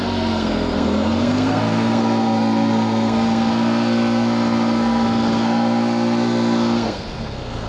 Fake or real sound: fake